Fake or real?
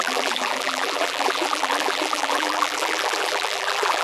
fake